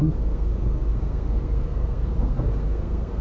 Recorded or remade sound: remade